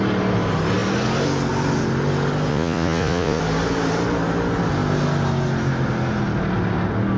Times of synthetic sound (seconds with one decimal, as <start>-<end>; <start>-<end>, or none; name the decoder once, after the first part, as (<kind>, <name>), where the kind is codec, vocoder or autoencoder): 2.5-3.4 (vocoder, Vocos)